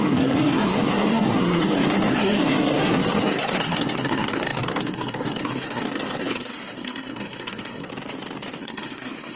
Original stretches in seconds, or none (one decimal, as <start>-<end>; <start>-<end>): 7.9-8.6